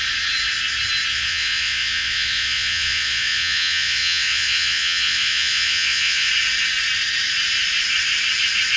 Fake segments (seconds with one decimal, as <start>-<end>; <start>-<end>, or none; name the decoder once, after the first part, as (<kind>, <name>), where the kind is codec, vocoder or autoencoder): 1.1-6.3 (vocoder, Vocos)